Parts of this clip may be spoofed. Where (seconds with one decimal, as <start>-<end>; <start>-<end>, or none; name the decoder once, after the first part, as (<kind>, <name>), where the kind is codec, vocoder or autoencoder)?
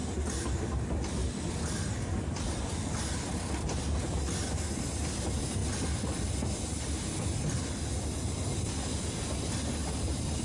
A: none